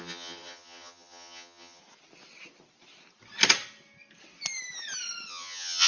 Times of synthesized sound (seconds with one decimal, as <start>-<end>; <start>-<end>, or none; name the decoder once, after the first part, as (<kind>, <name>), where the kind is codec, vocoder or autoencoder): 0.0-1.8 (vocoder, HiFi-GAN); 5.3-5.9